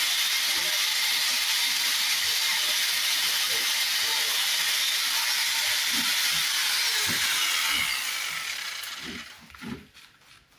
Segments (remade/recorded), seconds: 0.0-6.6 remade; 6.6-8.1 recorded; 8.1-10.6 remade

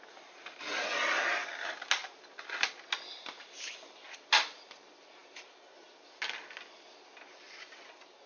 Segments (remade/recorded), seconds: 0.0-8.3 recorded

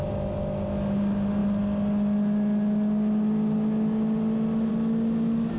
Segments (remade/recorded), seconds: 0.0-5.6 recorded

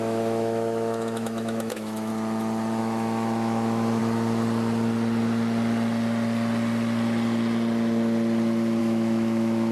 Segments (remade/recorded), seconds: 0.0-2.1 remade; 2.1-2.8 recorded; 2.8-4.0 remade; 4.0-8.8 recorded; 8.8-9.7 remade

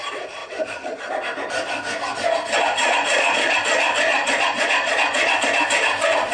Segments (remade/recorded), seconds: 0.0-0.4 recorded; 0.4-1.1 remade; 1.1-2.8 recorded; 2.8-3.6 remade; 3.6-4.1 recorded; 4.1-5.3 remade; 5.3-6.3 recorded

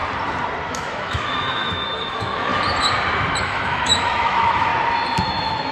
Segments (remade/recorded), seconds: 0.0-0.7 recorded; 0.7-2.5 remade; 2.5-3.4 recorded; 3.4-4.7 remade; 4.7-5.2 recorded; 5.2-5.7 remade

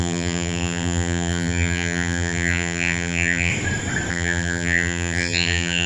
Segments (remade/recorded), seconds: 0.0-3.5 remade; 3.5-4.1 recorded; 4.1-5.9 remade